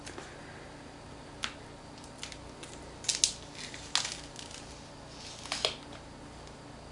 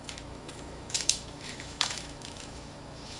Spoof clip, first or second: second